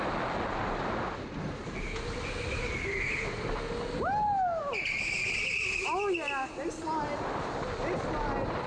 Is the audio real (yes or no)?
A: yes